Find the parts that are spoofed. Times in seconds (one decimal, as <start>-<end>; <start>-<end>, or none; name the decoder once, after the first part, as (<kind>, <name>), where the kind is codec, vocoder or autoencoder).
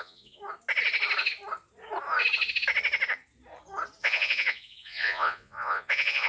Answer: 0.0-0.4 (vocoder, Vocos); 4.0-6.3